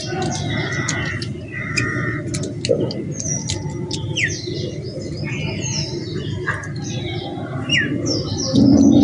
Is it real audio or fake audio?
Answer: real